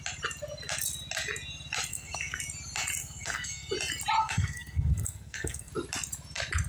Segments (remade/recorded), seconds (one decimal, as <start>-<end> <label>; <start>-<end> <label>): 0.0-1.9 recorded; 1.9-2.4 remade; 2.4-3.0 recorded; 3.0-3.7 remade; 3.7-4.2 recorded; 4.2-5.7 remade; 5.7-6.7 recorded